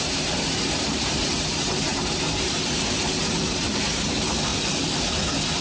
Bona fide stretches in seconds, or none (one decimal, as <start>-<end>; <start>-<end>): 4.5-5.6